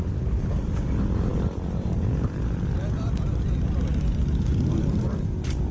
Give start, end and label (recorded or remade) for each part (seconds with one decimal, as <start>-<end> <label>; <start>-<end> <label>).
0.0-5.7 recorded